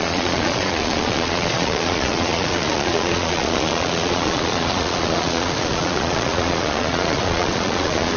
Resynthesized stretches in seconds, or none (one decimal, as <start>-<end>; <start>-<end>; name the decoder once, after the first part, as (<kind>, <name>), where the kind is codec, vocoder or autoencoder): 0.0-8.2 (vocoder, Vocos)